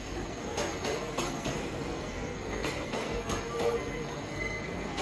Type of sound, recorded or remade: remade